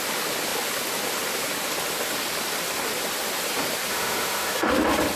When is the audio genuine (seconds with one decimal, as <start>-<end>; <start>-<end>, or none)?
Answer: 0.0-3.9; 4.7-5.2